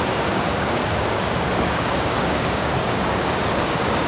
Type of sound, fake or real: fake